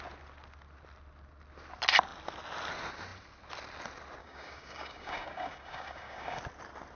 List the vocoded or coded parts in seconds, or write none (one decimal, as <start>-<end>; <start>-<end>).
4.2-6.4